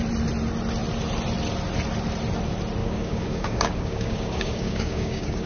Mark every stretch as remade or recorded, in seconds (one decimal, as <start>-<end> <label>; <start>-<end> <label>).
0.0-2.8 recorded; 2.8-5.5 remade